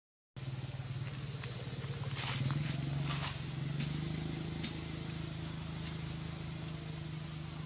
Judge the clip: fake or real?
real